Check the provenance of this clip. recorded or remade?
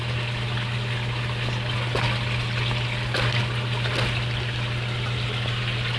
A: recorded